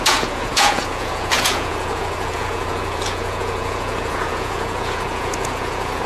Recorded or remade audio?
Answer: remade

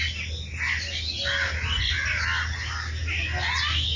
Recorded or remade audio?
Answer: recorded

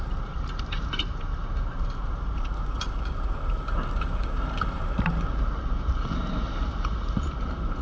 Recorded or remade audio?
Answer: remade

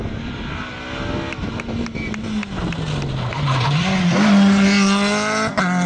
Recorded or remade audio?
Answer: recorded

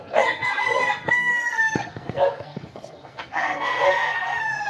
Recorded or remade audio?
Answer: remade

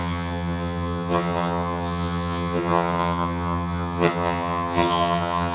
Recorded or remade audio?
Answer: remade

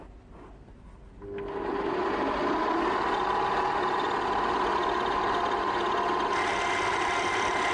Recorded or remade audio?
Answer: recorded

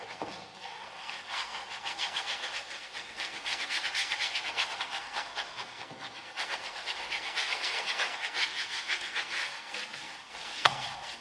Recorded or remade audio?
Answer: remade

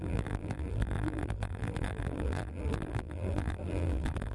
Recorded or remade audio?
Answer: remade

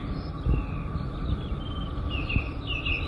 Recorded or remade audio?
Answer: recorded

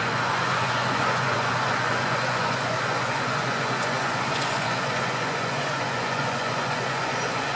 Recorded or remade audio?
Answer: remade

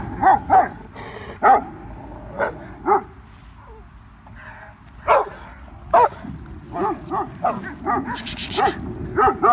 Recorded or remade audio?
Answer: recorded